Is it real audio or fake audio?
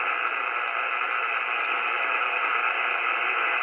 real